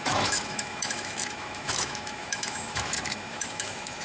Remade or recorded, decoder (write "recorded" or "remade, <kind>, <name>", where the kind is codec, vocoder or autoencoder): remade, autoencoder, DAC-VAE